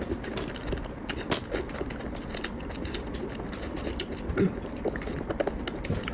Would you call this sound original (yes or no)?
yes